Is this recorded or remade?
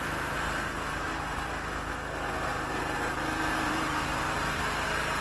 remade